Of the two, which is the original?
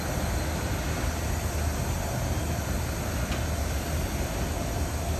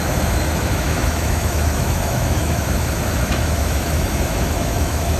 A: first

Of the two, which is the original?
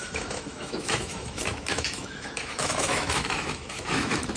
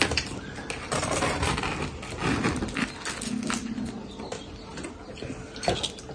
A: second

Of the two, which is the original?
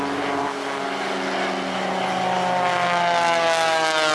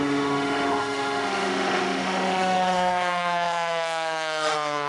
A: first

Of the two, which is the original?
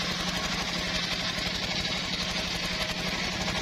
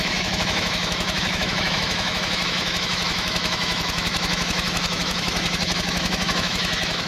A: first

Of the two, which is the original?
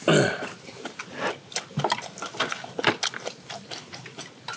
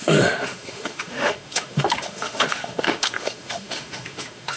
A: first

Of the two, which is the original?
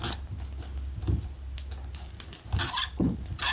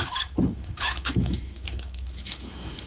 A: first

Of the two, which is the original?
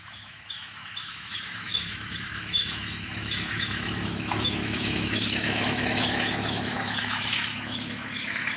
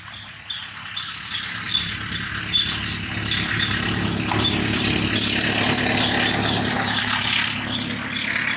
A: second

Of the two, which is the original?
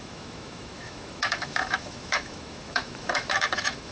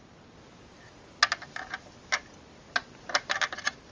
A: second